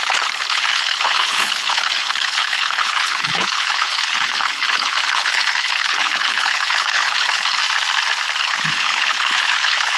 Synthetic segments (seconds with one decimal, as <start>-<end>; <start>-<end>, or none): 0.0-7.6; 8.4-10.0

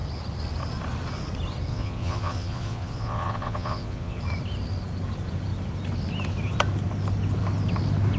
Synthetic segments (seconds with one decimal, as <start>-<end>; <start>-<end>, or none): 1.7-4.2

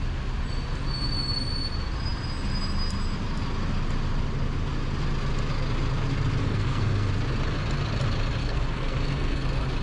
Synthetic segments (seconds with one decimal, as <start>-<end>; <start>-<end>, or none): 6.4-7.1; 8.4-9.4

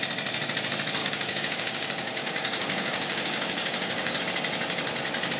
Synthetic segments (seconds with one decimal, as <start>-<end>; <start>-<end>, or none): 1.0-4.2

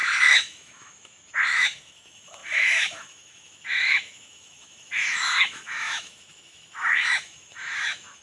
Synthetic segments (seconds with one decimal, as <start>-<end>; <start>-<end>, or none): 0.0-8.2